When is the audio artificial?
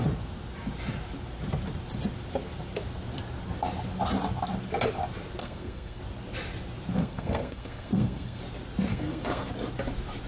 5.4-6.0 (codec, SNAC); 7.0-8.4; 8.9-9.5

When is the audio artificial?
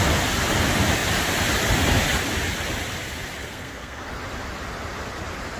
3.4-4.1 (codec, SNAC)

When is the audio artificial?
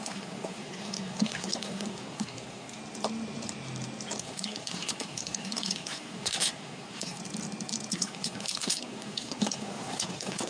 0.0-2.8 (codec, SNAC); 4.2-7.2; 7.9-10.5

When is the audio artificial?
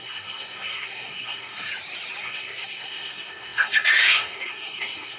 0.0-1.7 (codec, SNAC); 2.2-5.2